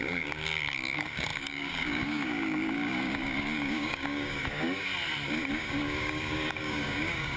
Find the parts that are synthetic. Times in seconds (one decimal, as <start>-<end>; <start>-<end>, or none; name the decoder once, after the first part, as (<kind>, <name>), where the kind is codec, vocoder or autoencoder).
0.0-4.9 (codec, DAC); 5.5-7.4

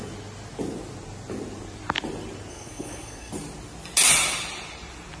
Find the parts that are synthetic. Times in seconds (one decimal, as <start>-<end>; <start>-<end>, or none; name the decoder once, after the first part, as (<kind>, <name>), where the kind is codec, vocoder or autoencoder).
2.5-3.3 (codec, SNAC)